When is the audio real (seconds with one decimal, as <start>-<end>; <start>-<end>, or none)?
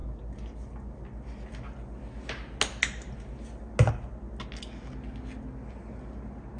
0.0-6.6